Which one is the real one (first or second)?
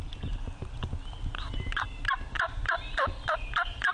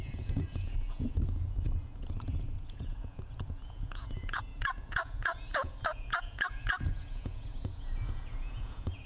first